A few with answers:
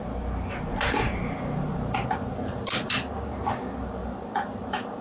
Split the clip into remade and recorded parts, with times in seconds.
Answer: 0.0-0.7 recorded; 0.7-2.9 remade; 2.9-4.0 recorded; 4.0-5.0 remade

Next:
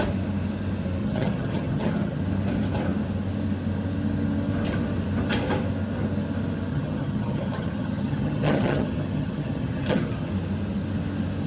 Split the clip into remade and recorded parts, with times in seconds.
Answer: 0.0-1.0 recorded; 1.0-2.2 remade; 2.2-6.7 recorded; 6.7-10.3 remade; 10.3-11.5 recorded

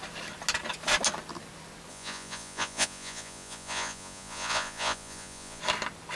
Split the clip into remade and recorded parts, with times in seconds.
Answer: 0.0-1.9 recorded; 1.9-5.6 remade; 5.6-6.2 recorded